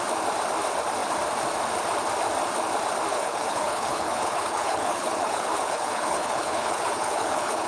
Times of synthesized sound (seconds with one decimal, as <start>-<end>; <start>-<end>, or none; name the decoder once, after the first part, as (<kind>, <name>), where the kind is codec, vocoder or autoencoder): 3.1-7.7 (codec, HILCodec)